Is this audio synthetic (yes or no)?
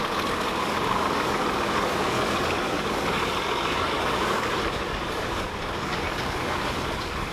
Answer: yes